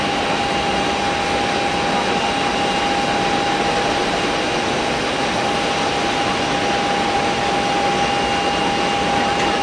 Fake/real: real